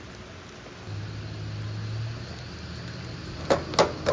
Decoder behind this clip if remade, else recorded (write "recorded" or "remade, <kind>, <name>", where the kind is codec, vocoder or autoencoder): recorded